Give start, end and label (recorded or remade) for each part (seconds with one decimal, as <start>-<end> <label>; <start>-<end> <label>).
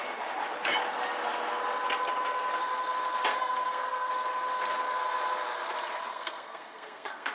0.0-3.3 recorded; 3.3-4.1 remade; 4.1-6.1 recorded; 6.1-7.3 remade